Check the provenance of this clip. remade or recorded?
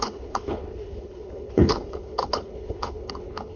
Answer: remade